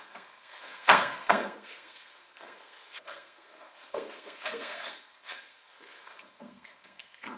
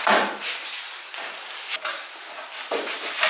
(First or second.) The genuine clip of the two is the second